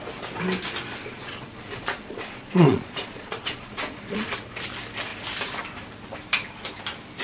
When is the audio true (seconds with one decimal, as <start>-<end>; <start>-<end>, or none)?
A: 0.0-1.0; 4.3-7.2